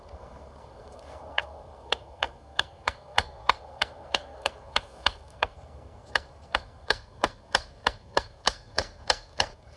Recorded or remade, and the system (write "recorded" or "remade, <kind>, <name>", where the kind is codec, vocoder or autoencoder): remade, codec, SNAC